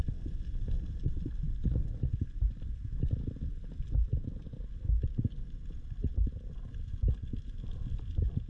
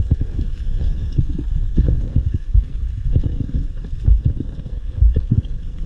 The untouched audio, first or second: first